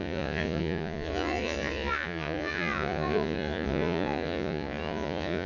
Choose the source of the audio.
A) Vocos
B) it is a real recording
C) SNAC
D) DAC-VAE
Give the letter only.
A